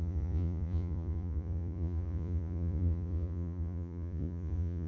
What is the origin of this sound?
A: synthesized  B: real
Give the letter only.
A